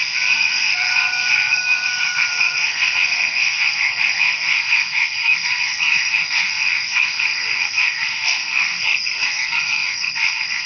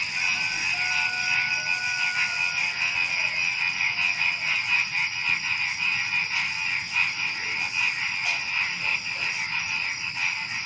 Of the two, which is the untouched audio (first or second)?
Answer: second